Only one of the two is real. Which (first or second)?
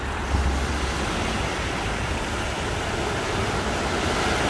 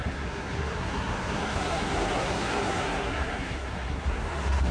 first